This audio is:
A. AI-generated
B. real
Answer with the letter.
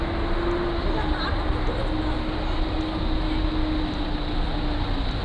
B